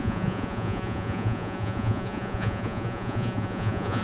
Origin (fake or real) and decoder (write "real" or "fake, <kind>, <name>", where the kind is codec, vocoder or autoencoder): fake, vocoder, Vocos